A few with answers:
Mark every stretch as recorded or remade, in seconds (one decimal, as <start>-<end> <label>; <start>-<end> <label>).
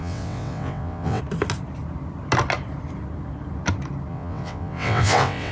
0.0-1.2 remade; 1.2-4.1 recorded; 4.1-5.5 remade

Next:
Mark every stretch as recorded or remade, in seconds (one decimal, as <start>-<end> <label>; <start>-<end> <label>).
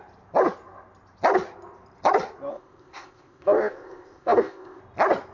0.0-2.5 recorded; 2.5-4.8 remade; 4.8-5.3 recorded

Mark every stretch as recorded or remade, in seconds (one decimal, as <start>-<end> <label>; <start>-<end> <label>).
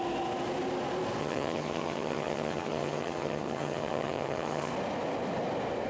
0.0-1.2 recorded; 1.2-4.7 remade; 4.7-5.9 recorded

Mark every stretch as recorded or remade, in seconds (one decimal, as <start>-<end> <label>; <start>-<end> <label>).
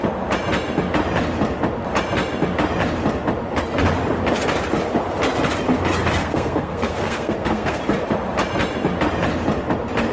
0.0-6.2 recorded; 6.2-7.8 remade; 7.8-10.1 recorded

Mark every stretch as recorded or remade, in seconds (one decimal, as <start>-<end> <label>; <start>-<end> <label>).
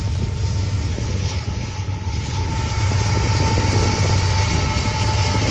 0.0-0.9 recorded; 0.9-2.5 remade; 2.5-5.5 recorded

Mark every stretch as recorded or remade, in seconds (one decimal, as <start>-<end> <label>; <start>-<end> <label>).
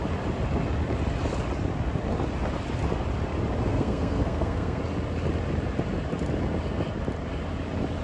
0.0-3.7 recorded; 3.7-4.8 remade; 4.8-8.0 recorded